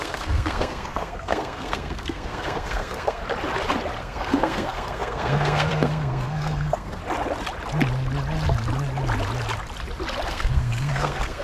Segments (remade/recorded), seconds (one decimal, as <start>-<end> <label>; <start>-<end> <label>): 0.0-3.2 remade; 3.2-4.0 recorded; 4.0-7.0 remade; 7.0-10.3 recorded; 10.3-11.4 remade

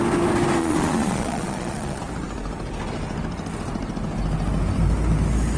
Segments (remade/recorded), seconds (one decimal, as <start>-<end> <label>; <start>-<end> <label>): 0.0-0.6 recorded; 0.6-2.0 remade; 2.0-5.6 recorded

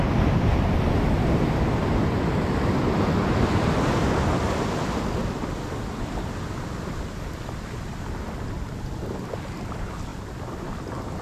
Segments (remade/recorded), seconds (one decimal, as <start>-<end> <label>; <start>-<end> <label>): 0.0-5.2 recorded; 5.2-5.8 remade; 5.8-10.1 recorded; 10.1-10.6 remade; 10.6-11.2 recorded

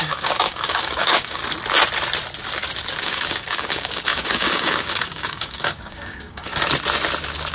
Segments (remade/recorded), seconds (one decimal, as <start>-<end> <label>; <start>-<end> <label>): 0.0-1.4 remade; 1.4-3.0 recorded; 3.0-6.5 remade; 6.5-7.5 recorded

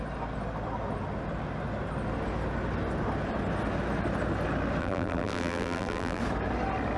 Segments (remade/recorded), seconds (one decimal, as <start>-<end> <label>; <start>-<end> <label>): 0.0-4.8 recorded; 4.8-6.2 remade; 6.2-7.0 recorded

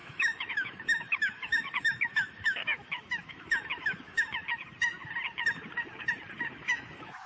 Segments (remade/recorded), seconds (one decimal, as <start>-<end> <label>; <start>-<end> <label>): 0.0-4.4 remade; 4.4-6.6 recorded; 6.6-7.3 remade